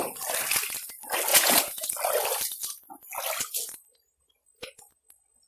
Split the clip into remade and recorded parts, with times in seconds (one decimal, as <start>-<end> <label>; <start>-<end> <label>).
0.0-1.3 recorded; 1.3-1.9 remade; 1.9-5.5 recorded